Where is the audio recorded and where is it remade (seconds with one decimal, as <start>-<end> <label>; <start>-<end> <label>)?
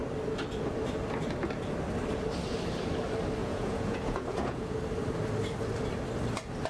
0.0-3.4 recorded; 3.4-4.8 remade; 4.8-6.7 recorded